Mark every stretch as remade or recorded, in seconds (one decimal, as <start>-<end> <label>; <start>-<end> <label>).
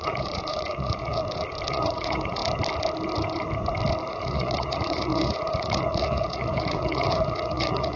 0.0-1.2 remade; 1.2-1.7 recorded; 1.7-2.4 remade; 2.4-4.1 recorded; 4.1-8.0 remade